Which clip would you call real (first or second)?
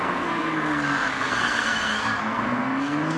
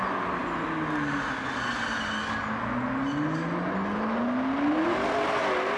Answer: second